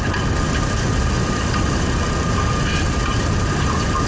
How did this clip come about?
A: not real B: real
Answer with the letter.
B